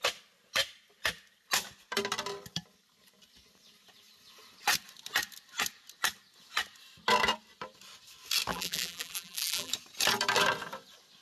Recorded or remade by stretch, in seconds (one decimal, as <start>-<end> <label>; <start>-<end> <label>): 0.0-8.5 recorded; 8.5-9.7 remade; 9.7-11.2 recorded